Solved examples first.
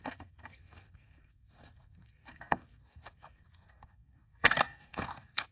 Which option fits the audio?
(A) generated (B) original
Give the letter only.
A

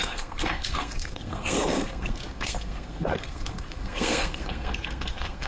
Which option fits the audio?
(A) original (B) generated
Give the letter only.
B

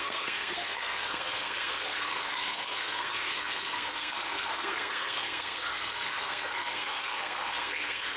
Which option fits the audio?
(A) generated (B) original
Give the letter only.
A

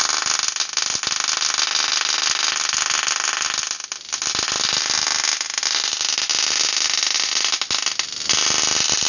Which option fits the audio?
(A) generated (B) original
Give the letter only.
B